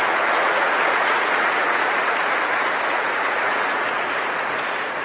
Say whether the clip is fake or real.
fake